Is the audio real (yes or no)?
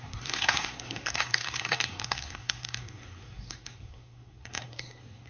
no